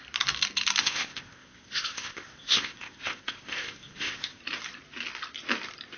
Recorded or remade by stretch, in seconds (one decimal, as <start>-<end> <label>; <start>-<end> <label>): 0.0-0.8 recorded; 0.8-4.4 remade; 4.4-6.0 recorded